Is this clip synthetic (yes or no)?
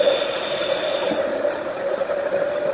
yes